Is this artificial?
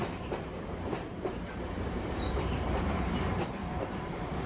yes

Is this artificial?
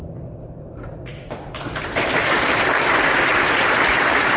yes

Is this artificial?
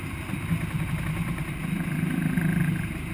yes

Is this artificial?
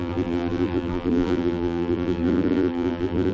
yes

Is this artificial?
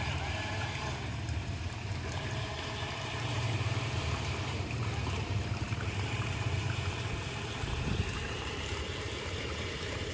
yes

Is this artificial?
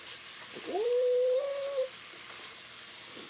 yes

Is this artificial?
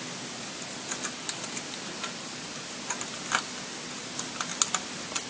no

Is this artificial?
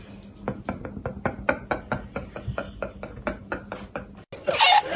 no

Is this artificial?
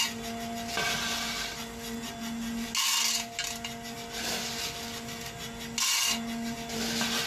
no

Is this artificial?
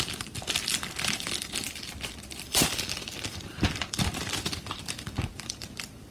yes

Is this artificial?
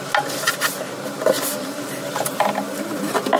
no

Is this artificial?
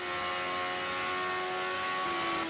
no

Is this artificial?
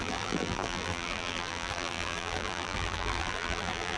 yes